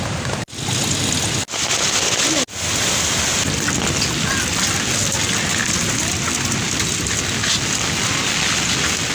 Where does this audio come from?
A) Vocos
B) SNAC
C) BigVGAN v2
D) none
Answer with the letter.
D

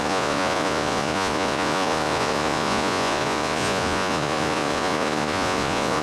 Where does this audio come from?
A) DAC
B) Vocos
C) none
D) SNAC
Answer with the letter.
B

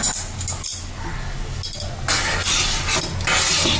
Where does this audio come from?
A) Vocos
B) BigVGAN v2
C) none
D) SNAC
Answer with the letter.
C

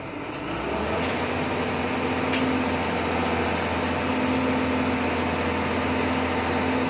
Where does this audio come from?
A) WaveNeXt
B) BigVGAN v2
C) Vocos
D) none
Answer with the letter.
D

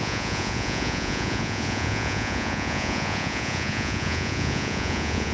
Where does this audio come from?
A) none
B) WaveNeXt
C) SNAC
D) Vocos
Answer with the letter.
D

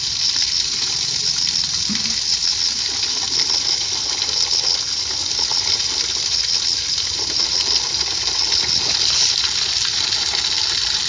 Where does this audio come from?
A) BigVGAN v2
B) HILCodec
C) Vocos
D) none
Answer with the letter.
D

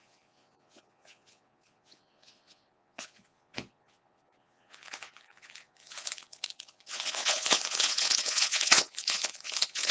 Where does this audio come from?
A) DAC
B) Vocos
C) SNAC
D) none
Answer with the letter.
B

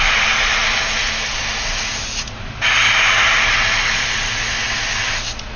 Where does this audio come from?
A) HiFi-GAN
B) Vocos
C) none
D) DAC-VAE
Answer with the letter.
C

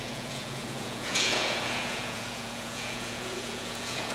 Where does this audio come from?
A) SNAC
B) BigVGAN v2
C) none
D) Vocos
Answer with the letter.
D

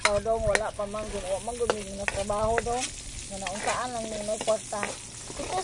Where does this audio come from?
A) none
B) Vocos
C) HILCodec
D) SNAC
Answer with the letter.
A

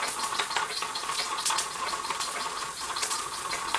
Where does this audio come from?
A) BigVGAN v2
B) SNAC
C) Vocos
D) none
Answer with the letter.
C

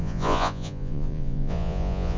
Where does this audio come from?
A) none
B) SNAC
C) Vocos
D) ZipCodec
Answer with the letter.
C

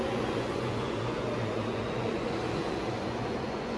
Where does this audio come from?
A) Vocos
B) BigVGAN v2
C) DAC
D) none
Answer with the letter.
A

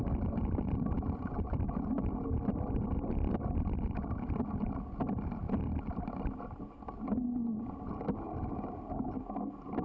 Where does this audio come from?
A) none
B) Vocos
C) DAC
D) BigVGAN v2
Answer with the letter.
A